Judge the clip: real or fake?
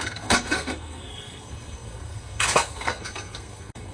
fake